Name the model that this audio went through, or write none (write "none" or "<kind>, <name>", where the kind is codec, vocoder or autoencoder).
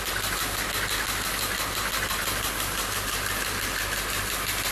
none